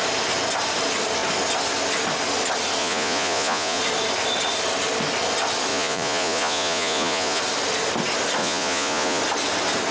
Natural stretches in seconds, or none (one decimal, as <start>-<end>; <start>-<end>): 0.0-2.8; 3.8-5.7; 7.4-8.4; 9.2-9.9